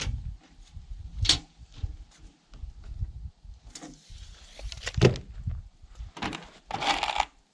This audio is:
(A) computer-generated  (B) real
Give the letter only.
B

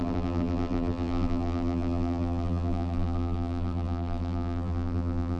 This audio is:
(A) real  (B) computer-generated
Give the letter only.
B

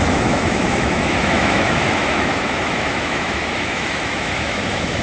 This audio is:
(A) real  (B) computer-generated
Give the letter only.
B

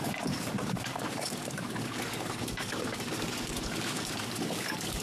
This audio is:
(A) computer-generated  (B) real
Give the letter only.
A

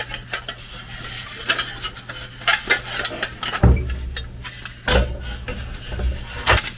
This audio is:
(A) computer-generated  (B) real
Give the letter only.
B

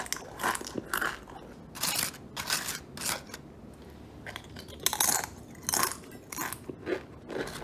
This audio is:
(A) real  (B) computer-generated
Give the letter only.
A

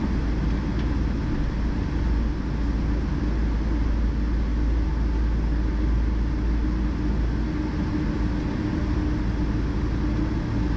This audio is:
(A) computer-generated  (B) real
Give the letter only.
B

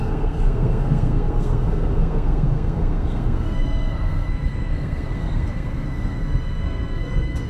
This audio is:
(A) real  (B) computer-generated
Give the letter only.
B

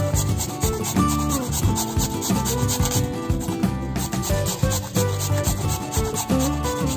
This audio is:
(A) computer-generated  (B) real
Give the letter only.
B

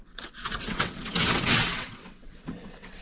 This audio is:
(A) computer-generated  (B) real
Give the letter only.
A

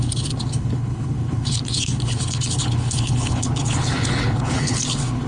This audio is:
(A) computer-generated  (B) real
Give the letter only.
A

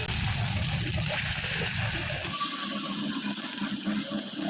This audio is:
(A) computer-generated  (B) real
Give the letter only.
B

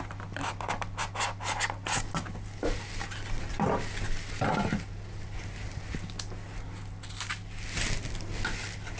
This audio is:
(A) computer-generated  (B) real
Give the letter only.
B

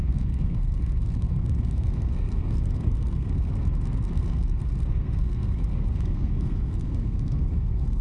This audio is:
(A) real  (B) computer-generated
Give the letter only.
B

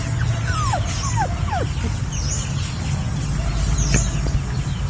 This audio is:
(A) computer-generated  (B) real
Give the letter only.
B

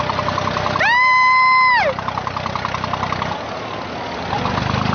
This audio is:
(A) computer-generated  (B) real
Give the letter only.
B